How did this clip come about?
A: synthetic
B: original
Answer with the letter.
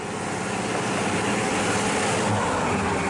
B